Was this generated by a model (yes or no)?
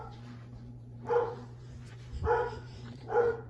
yes